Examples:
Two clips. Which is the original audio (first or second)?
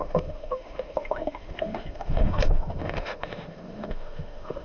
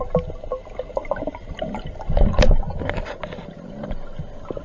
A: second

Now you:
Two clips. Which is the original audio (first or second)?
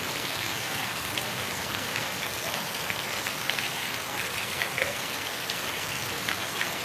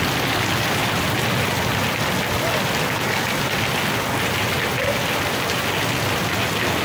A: second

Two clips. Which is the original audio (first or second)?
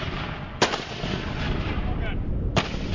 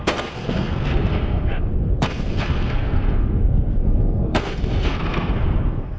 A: first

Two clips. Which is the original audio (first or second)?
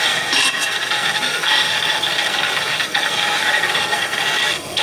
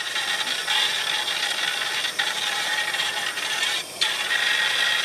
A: second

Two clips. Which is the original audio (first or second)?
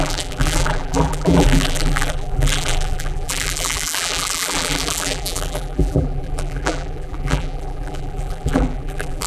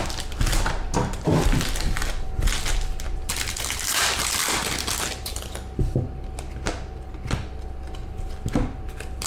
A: second